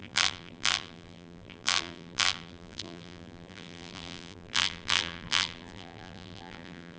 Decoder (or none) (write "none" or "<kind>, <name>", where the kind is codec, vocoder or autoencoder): vocoder, BigVGAN v2